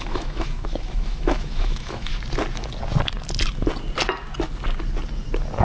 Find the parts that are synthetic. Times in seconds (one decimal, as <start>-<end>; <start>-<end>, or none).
0.0-2.1